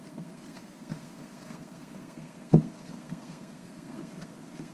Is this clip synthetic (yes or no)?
yes